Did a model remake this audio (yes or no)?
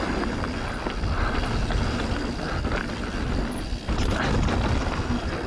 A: no